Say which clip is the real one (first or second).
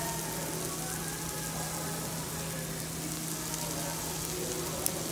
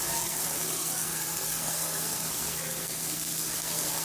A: first